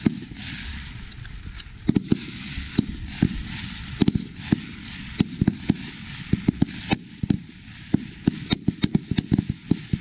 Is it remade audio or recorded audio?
recorded